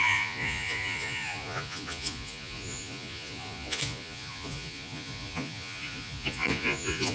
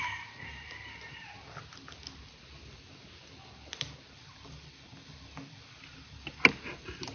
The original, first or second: second